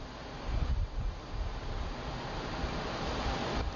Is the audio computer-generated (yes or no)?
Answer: no